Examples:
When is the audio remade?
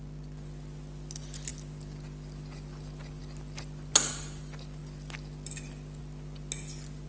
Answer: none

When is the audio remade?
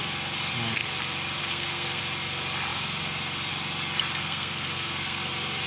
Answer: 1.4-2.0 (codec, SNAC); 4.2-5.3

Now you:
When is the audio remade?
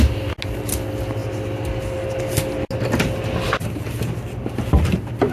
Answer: none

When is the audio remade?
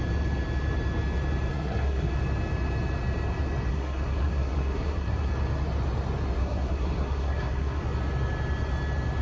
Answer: 1.5-2.1 (codec, SNAC); 3.7-5.3; 6.4-7.8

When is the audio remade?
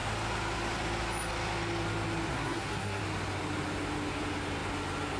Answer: 2.3-3.0 (codec, SNAC)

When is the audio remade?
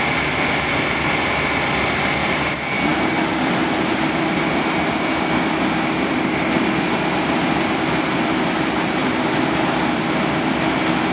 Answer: none